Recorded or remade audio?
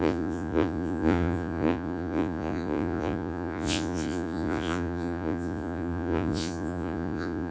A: remade